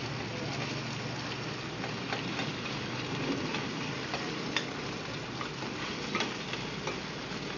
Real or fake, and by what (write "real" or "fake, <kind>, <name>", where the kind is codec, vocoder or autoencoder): real